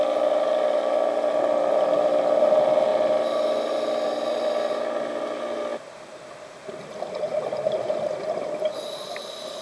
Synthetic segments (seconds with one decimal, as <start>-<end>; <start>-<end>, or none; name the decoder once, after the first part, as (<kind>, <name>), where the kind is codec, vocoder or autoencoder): none